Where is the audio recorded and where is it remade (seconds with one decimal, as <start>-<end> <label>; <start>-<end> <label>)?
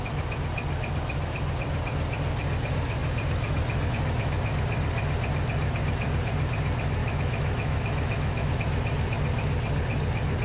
0.0-7.0 recorded; 7.0-8.5 remade; 8.5-10.4 recorded